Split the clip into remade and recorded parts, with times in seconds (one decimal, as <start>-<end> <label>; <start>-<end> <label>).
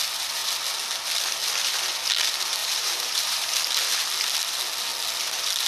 0.0-2.6 recorded; 2.6-3.5 remade; 3.5-5.7 recorded